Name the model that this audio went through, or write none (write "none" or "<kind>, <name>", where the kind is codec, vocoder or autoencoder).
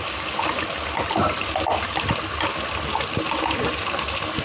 none